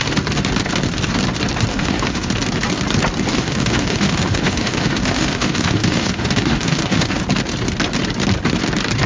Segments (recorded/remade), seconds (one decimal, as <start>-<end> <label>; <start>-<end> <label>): 0.0-1.7 recorded; 1.7-2.3 remade; 2.3-3.3 recorded; 3.3-7.2 remade; 7.2-9.1 recorded